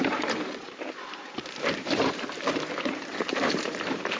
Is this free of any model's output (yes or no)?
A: no